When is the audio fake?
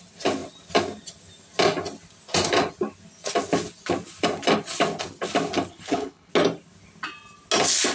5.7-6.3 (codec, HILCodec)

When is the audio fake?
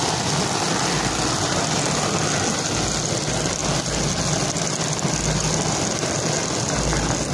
none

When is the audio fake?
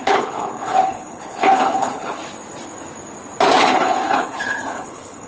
0.0-2.2 (codec, HILCodec); 3.6-5.3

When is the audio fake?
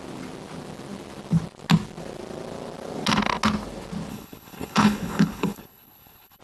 4.1-6.4 (codec, HILCodec)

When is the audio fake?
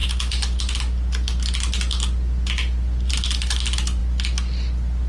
none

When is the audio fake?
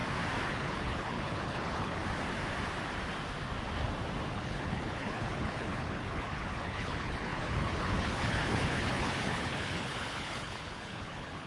0.5-2.0 (codec, HILCodec); 4.3-11.5